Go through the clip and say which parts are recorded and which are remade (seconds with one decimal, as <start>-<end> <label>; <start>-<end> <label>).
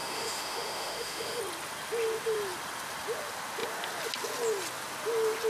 0.0-1.4 remade; 1.4-5.5 recorded